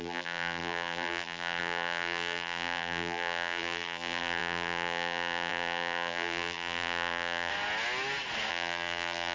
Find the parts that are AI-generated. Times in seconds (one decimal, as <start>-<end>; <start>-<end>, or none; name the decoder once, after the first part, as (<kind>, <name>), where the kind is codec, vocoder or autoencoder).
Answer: 0.0-7.5 (vocoder, BigVGAN v2); 8.5-9.3